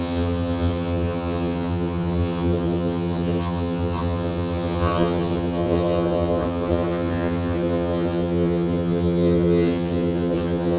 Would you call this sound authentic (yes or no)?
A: no